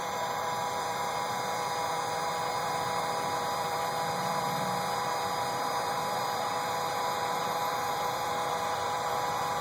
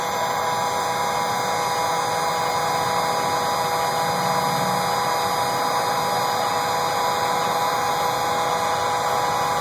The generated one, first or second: first